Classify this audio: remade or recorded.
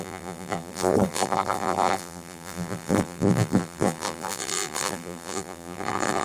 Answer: remade